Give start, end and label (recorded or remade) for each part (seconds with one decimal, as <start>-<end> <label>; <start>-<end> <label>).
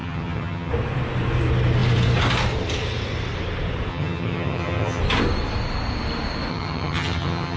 0.0-0.7 remade; 0.7-3.9 recorded; 3.9-5.0 remade; 5.0-6.5 recorded; 6.5-7.6 remade